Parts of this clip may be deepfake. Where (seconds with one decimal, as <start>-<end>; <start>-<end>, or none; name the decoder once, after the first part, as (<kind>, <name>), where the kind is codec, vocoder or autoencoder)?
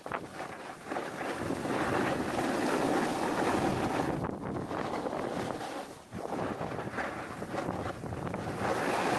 none